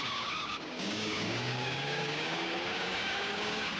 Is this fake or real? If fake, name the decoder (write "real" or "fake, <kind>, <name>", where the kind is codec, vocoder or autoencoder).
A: fake, codec, DAC